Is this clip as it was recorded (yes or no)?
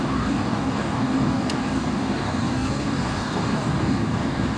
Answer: no